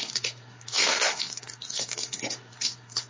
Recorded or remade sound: remade